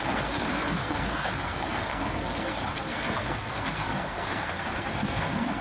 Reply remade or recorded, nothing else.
remade